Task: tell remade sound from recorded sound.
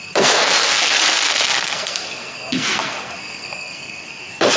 remade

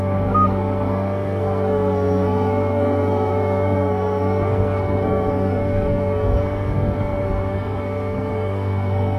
remade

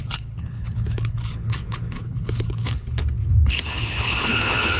remade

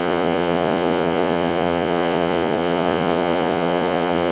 remade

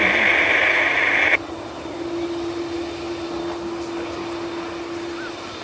recorded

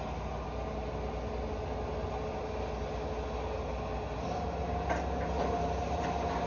recorded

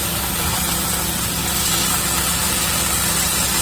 recorded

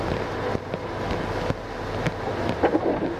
recorded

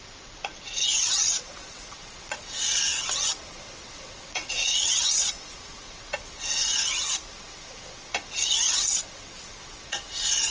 remade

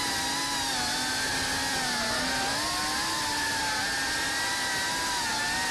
recorded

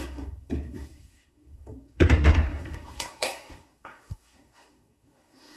remade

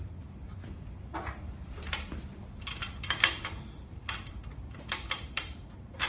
remade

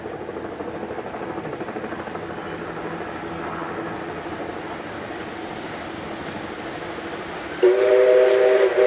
recorded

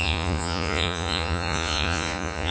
remade